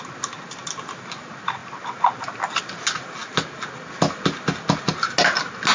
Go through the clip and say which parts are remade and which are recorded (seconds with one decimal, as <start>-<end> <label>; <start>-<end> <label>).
0.0-5.7 recorded